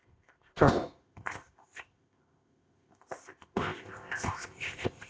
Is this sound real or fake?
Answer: fake